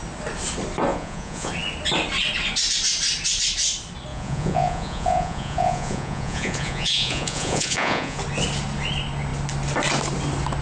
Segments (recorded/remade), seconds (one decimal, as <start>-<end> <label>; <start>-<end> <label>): 0.0-0.9 recorded; 0.9-1.5 remade; 1.5-4.1 recorded; 4.1-8.2 remade; 8.2-10.6 recorded